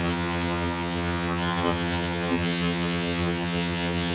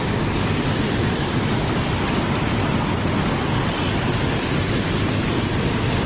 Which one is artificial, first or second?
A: first